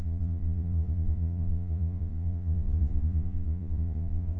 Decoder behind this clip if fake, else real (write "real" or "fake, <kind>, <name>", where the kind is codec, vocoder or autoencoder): fake, vocoder, Vocos